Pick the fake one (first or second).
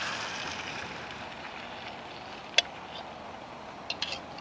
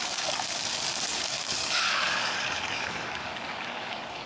second